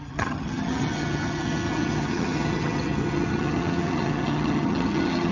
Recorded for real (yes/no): no